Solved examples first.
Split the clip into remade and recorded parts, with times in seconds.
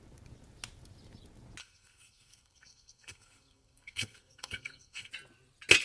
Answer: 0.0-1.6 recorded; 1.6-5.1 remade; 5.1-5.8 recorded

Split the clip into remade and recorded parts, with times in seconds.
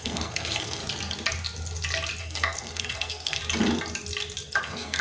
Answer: 0.0-0.8 remade; 0.8-2.2 recorded; 2.2-3.4 remade; 3.4-4.6 recorded; 4.6-5.0 remade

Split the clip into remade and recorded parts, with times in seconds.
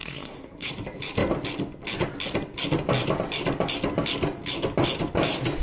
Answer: 0.0-0.7 remade; 0.7-5.6 recorded